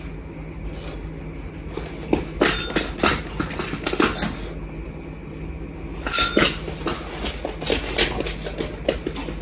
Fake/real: real